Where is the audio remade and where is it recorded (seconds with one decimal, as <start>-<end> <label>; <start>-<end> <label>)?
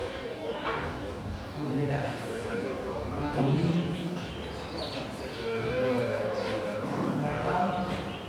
0.0-4.3 remade; 4.3-5.3 recorded; 5.3-7.7 remade; 7.7-8.3 recorded